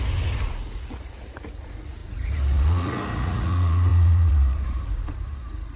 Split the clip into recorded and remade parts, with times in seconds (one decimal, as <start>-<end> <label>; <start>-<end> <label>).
0.0-5.8 remade